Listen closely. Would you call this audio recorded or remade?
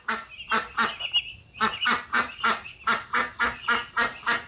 recorded